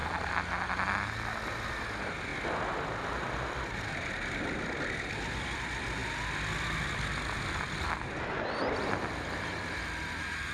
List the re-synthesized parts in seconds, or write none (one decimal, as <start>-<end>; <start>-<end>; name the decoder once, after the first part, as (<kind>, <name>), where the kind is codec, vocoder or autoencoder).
none